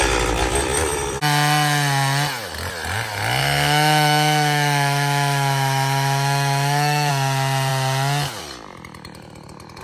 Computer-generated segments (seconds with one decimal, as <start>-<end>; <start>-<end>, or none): 3.4-7.1